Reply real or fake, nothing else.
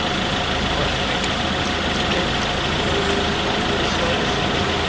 real